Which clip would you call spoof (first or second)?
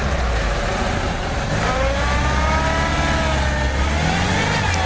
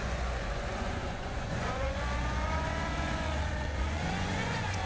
second